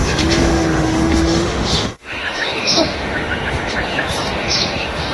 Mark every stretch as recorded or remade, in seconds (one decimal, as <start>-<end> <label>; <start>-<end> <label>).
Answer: 0.0-5.1 remade